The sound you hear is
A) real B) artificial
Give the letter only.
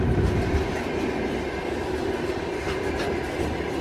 A